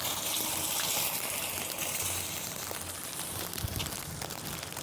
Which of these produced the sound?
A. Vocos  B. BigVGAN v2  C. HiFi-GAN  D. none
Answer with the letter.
D